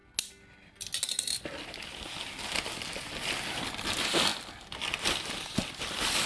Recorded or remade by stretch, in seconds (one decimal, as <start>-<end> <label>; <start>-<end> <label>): 0.0-6.3 recorded